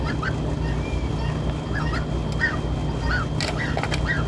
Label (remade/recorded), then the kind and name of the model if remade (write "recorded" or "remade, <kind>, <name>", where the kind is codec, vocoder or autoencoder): recorded